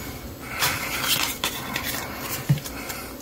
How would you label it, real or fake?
real